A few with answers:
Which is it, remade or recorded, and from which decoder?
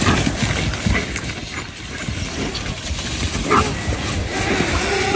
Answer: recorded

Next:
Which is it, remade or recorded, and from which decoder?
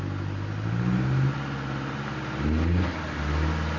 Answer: recorded